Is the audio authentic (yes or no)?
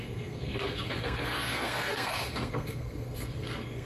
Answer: no